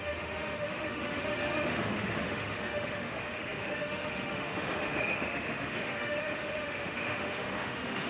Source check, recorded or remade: remade